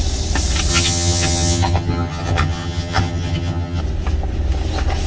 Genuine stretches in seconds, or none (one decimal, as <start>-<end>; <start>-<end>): 0.0-0.7; 3.8-5.1